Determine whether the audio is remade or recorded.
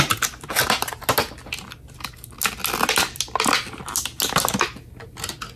recorded